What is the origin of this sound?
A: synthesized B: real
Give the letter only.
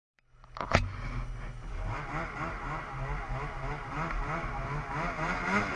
B